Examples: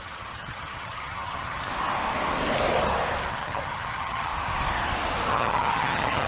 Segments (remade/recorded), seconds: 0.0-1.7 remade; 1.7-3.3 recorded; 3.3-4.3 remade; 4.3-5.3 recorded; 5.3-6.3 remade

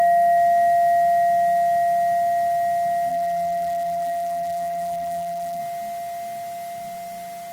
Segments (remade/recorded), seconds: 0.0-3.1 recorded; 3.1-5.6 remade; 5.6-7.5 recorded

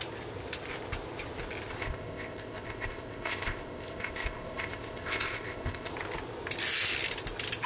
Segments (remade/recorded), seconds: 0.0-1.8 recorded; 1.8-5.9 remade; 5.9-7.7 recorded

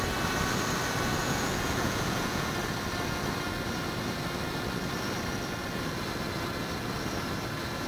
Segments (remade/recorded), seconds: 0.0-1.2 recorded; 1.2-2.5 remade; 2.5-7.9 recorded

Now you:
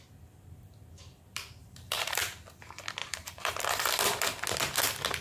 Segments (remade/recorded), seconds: 0.0-1.6 recorded; 1.6-2.2 remade; 2.2-3.0 recorded; 3.0-3.5 remade; 3.5-5.2 recorded

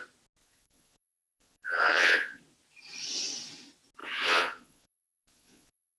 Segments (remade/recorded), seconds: 0.0-0.4 recorded; 0.4-2.4 remade; 2.4-4.0 recorded; 4.0-6.0 remade